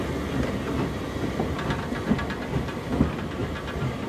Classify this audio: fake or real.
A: real